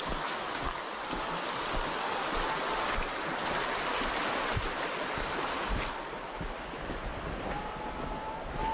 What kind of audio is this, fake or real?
real